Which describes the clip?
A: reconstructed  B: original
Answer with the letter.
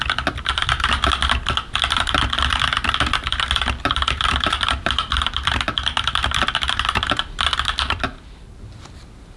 A